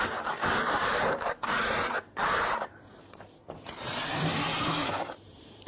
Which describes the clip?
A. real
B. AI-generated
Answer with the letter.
B